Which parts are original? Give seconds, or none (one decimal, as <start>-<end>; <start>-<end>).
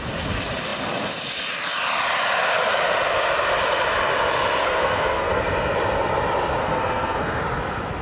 0.0-4.6; 5.3-6.6; 7.4-8.0